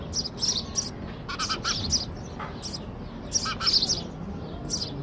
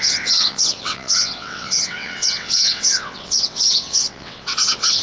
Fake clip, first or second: second